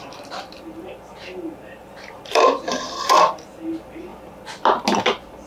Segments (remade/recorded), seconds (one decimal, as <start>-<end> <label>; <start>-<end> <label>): 0.0-1.8 recorded; 1.8-3.3 remade; 3.3-5.5 recorded